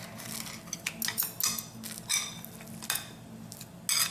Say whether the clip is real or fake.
real